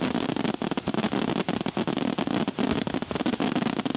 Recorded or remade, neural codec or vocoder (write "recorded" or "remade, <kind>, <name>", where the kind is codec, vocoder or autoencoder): recorded